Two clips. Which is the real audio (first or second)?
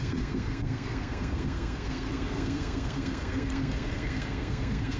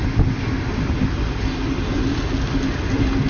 second